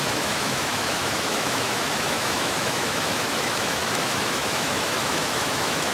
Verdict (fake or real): fake